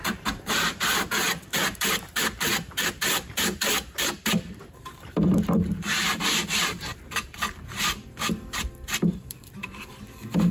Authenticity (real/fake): fake